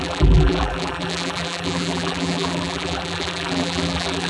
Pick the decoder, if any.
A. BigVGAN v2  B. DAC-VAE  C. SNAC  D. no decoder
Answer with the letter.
A